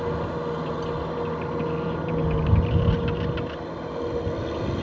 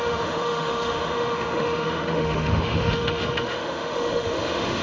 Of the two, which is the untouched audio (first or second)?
first